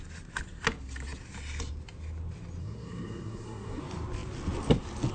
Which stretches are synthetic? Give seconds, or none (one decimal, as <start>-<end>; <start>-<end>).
2.6-3.8